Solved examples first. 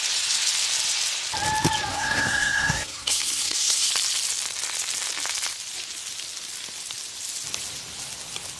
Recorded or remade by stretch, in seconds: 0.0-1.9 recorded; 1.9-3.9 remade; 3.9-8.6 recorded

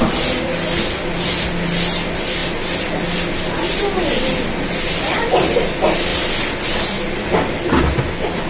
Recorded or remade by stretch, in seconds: 0.0-8.5 recorded